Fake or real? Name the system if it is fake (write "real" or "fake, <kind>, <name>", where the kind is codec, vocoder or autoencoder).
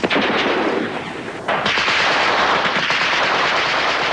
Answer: fake, vocoder, BigVGAN v2